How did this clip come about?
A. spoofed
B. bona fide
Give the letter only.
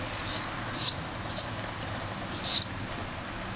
B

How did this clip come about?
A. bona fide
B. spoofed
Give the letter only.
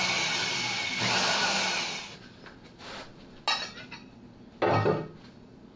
A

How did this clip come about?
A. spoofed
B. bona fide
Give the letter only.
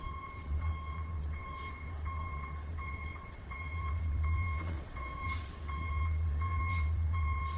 A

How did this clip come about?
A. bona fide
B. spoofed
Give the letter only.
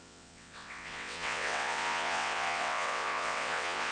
B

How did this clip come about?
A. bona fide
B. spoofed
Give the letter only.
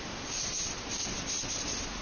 A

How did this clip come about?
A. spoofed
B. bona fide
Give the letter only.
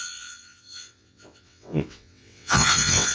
A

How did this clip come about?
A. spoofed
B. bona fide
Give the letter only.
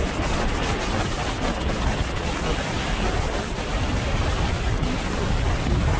B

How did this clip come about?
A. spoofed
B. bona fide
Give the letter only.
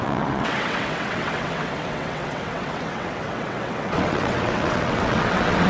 A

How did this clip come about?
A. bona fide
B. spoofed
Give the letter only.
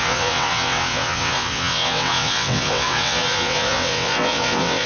B